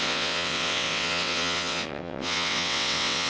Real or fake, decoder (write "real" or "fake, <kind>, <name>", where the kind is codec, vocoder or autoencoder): fake, vocoder, WaveNeXt